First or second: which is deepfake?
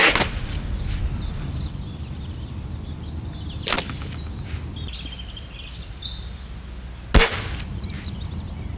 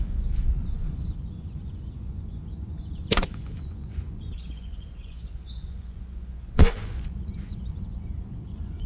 second